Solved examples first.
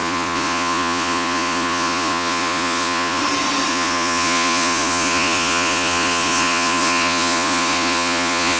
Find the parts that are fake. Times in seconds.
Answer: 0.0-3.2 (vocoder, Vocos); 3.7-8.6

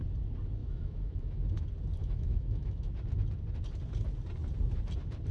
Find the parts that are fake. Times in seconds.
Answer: 0.6-1.6 (autoencoder, DAC-VAE); 2.0-2.9

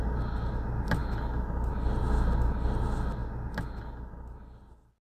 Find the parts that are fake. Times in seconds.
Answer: none

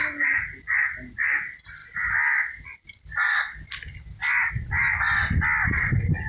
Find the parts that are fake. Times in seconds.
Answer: none

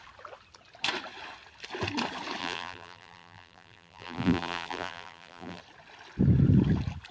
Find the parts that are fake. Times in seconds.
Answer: 2.4-5.6 (vocoder, BigVGAN v2)